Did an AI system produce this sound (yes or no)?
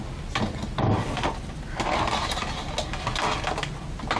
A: no